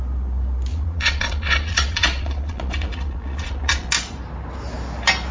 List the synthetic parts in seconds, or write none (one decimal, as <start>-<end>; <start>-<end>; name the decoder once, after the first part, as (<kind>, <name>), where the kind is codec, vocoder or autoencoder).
0.7-3.9 (vocoder, Vocos)